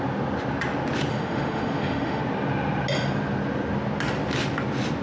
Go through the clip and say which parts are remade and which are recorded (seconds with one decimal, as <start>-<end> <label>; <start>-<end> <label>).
0.0-1.1 recorded; 1.1-2.2 remade; 2.2-5.0 recorded